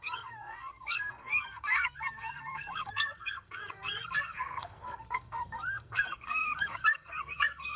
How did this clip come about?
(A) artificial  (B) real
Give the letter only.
A